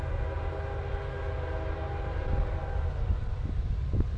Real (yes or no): yes